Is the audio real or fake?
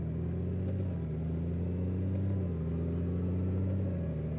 real